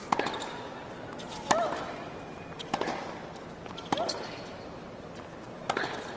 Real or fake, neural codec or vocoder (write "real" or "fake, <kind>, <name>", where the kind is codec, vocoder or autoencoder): real